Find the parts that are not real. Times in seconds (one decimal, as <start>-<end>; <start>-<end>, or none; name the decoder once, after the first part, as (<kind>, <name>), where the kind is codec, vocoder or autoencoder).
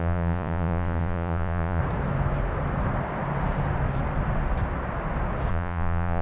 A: 0.0-1.8 (vocoder, Vocos); 5.5-6.2